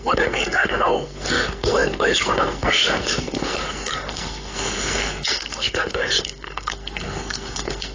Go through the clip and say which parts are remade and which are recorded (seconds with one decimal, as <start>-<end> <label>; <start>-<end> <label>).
0.0-7.9 remade